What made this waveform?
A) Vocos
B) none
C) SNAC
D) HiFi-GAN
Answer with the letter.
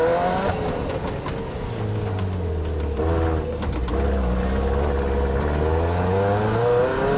B